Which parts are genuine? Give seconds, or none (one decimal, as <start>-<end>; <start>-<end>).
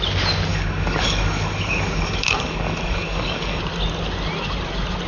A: 0.0-0.5; 3.6-5.1